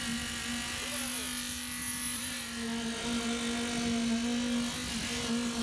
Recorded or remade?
recorded